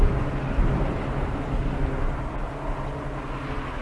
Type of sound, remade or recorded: recorded